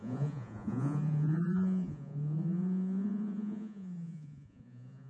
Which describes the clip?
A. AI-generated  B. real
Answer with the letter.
A